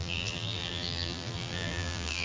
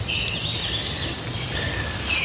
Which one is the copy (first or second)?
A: first